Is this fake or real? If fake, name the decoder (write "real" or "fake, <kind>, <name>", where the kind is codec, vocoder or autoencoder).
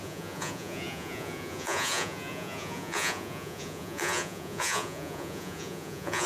fake, vocoder, Vocos